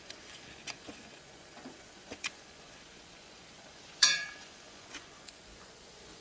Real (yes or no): no